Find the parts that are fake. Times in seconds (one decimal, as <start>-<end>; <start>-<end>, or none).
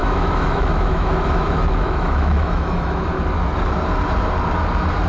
0.0-3.1